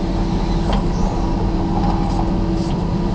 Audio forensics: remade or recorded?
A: recorded